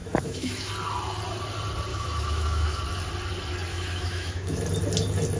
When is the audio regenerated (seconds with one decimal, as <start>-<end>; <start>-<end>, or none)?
0.0-0.7; 1.9-2.8; 3.7-4.6